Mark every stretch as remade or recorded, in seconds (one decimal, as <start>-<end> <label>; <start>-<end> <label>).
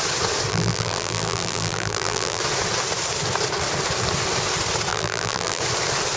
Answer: 0.0-0.5 recorded; 0.5-2.4 remade; 2.4-4.9 recorded; 4.9-5.6 remade; 5.6-6.2 recorded